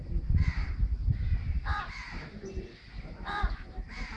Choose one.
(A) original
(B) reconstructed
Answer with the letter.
B